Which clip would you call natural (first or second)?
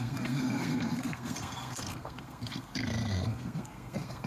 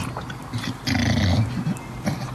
second